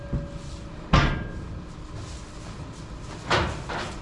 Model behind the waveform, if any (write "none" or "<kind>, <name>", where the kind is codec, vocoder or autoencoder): none